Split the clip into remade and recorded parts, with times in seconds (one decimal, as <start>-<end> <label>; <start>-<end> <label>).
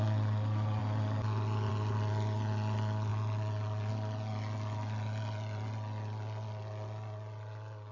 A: 0.0-7.9 recorded